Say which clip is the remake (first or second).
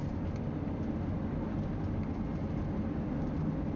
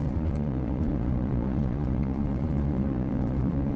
second